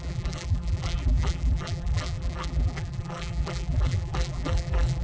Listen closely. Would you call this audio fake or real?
fake